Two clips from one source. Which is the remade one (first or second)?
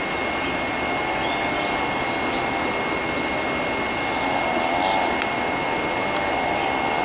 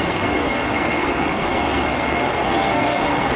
second